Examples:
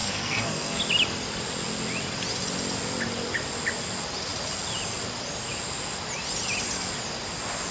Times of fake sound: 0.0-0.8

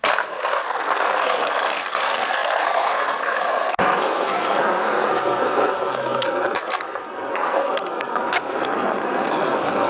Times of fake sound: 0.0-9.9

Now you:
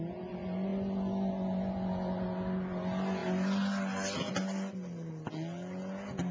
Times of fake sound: none

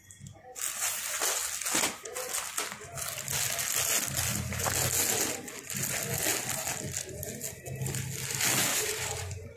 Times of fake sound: 8.7-9.6

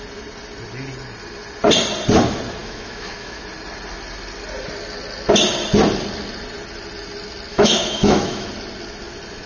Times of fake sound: 2.6-3.4; 7.5-8.5

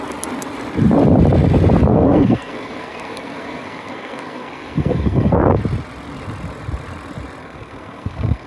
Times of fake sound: 1.9-5.6; 7.4-8.5

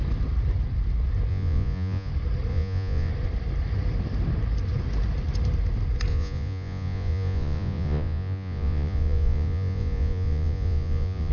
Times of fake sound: 1.3-2.1; 2.5-3.1; 6.1-11.3

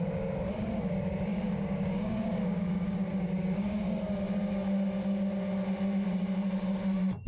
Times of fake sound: 1.3-4.0